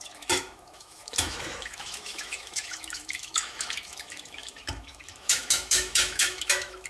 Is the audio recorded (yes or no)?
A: no